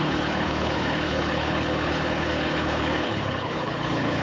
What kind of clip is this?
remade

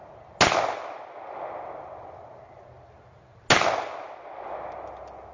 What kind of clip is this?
recorded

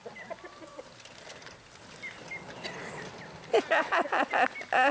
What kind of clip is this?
recorded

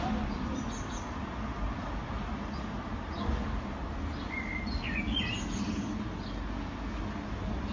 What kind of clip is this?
recorded